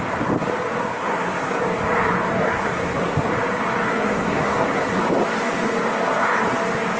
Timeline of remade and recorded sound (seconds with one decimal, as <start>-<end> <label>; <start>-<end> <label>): 0.0-0.8 recorded; 0.8-1.6 remade; 1.6-2.4 recorded; 2.4-3.3 remade; 3.3-3.9 recorded; 3.9-5.0 remade; 5.0-7.0 recorded